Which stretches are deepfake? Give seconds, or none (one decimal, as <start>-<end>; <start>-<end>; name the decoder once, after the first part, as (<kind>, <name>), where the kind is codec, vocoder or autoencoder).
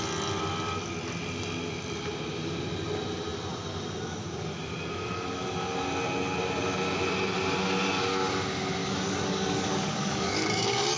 8.8-11.0 (codec, DAC)